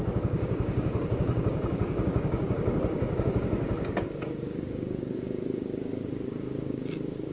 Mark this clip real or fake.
fake